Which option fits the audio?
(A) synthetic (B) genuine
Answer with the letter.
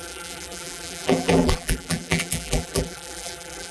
A